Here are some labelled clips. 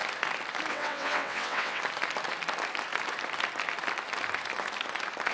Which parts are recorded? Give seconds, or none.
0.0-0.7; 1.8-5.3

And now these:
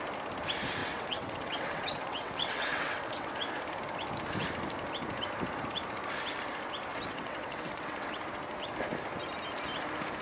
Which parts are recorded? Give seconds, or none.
0.0-0.8; 3.3-6.9; 8.2-10.2